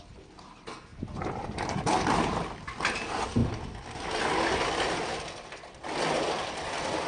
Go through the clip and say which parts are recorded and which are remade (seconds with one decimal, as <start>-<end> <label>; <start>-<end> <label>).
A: 0.0-0.9 recorded; 0.9-1.9 remade; 1.9-7.1 recorded